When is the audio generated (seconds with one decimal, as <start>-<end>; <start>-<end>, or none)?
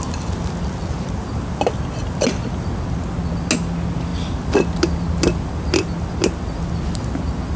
none